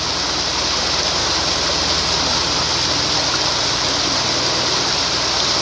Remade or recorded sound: recorded